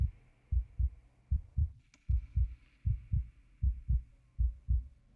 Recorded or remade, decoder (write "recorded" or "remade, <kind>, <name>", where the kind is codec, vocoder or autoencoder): recorded